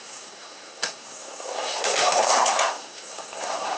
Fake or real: fake